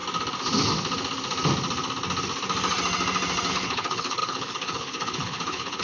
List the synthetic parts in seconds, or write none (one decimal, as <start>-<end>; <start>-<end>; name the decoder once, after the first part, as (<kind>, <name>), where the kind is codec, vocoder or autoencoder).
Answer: 3.5-5.8 (codec, HILCodec)